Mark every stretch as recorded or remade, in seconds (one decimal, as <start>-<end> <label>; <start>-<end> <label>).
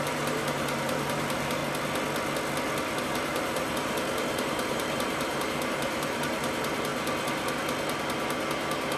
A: 0.0-1.6 remade; 1.6-3.0 recorded; 3.0-6.9 remade; 6.9-9.0 recorded